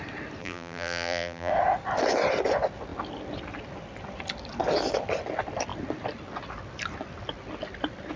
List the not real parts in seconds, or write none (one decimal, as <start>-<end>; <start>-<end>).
0.4-1.5